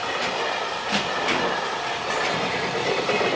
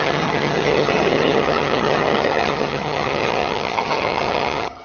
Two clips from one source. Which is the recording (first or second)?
first